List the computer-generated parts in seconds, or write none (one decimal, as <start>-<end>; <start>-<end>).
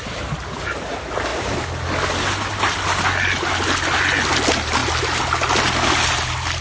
none